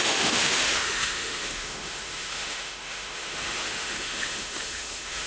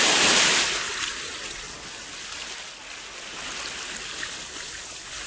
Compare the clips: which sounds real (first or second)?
second